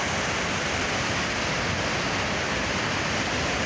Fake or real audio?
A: real